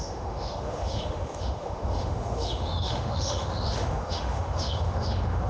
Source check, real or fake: fake